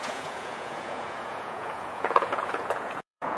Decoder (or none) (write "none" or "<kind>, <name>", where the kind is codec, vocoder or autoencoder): vocoder, Vocos